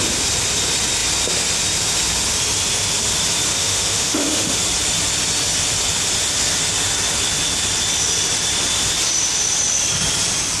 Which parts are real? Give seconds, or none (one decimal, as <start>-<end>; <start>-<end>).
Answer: 0.0-3.5; 4.6-10.6